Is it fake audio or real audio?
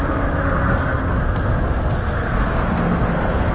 fake